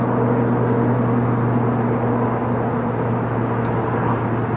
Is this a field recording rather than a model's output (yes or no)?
yes